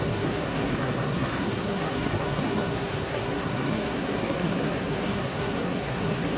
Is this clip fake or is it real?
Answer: fake